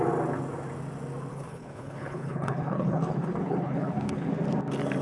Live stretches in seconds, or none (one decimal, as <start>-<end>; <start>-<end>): 0.0-1.3; 4.3-5.0